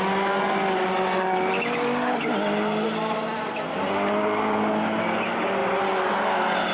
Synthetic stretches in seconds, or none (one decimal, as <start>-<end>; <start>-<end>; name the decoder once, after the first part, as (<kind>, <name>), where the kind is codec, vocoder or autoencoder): none